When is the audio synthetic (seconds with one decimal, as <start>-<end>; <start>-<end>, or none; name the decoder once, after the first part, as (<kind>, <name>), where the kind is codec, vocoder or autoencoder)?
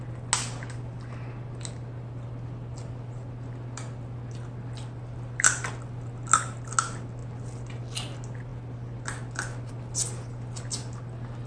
none